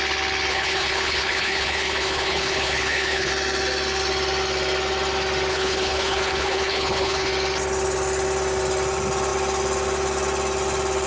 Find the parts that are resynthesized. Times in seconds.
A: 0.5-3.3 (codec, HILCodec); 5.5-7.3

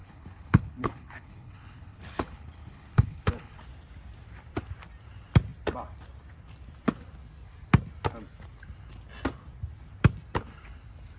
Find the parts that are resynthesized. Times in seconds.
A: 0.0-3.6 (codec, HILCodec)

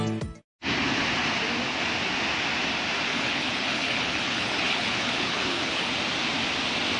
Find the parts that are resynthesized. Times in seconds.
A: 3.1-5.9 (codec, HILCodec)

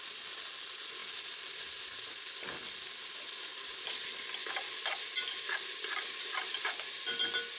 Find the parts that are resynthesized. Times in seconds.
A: none

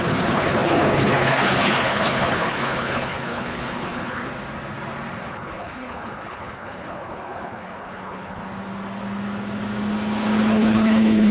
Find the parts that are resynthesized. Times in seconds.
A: 0.0-4.2 (codec, HILCodec); 5.3-8.4; 10.5-11.3